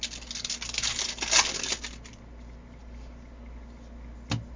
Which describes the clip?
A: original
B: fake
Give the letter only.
A